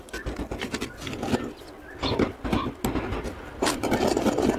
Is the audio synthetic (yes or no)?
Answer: no